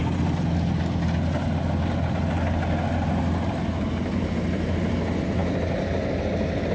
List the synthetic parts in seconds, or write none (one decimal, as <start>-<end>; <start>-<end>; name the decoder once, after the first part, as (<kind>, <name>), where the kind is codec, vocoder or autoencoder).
none